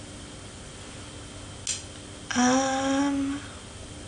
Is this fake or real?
real